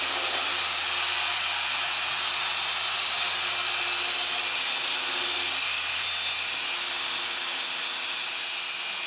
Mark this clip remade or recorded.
recorded